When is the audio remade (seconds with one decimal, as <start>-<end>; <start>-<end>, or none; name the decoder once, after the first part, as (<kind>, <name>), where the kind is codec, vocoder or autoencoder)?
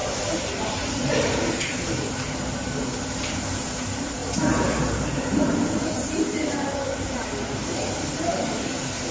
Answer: 0.0-9.1 (vocoder, BigVGAN v2)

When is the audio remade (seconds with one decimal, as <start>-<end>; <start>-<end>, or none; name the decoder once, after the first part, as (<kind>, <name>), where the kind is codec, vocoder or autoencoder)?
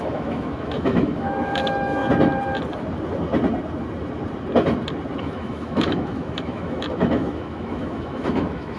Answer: 0.0-2.0 (autoencoder, DAC-VAE); 5.2-8.8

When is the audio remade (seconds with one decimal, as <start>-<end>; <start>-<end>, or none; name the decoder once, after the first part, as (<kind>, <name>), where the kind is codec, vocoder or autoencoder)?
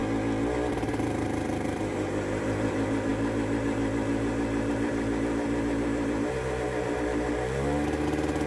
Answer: 0.7-8.5 (vocoder, BigVGAN v2)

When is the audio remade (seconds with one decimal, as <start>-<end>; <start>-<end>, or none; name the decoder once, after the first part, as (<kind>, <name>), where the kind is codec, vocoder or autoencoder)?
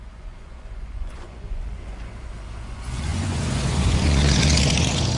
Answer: 0.0-5.2 (vocoder, Vocos)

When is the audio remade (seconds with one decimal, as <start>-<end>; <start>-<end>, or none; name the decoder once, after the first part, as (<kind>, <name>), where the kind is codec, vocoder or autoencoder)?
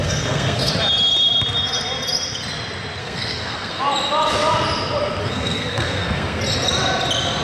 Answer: 0.0-0.7 (codec, SNAC); 3.0-3.8; 5.2-6.4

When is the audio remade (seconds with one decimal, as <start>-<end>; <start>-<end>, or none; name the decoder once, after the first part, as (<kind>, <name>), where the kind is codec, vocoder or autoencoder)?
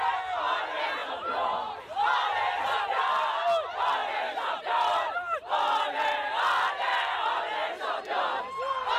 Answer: 1.0-1.8 (vocoder, BigVGAN v2)